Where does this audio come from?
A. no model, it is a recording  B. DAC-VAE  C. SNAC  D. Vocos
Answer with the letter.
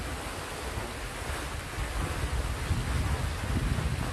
A